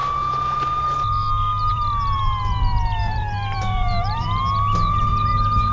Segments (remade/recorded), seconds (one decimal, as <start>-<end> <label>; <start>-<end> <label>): 0.0-1.7 recorded; 1.7-5.1 remade; 5.1-5.7 recorded